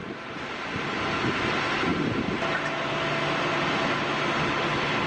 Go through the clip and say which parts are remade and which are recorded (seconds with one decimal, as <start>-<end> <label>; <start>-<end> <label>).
0.0-5.1 recorded